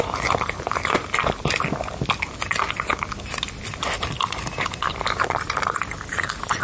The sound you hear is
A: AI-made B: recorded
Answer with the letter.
B